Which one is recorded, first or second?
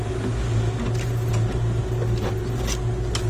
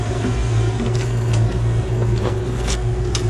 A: first